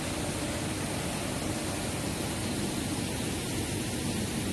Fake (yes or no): no